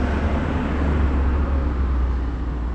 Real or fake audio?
real